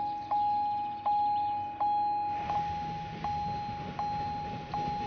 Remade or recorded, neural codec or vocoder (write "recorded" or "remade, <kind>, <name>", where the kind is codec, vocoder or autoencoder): recorded